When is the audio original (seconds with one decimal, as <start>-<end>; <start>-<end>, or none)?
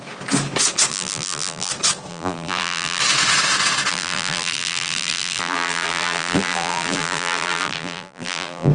0.0-0.9; 1.7-2.1; 3.0-3.9